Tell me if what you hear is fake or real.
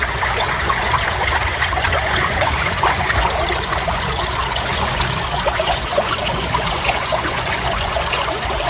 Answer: fake